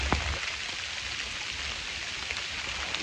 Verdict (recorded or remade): recorded